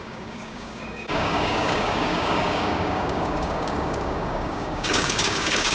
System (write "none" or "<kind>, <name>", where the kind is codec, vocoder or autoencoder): codec, DAC